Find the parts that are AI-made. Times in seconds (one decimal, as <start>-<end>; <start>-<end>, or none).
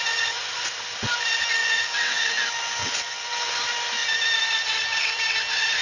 1.6-2.2; 2.8-3.5